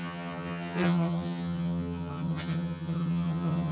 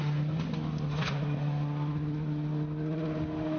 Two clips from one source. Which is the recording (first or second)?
second